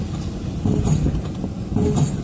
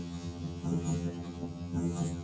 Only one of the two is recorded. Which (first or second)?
first